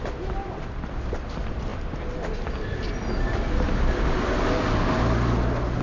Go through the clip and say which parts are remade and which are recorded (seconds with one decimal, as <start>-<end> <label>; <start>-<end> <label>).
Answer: 0.0-5.8 recorded